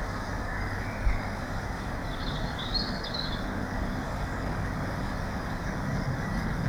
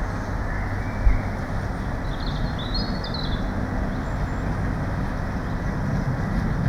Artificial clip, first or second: first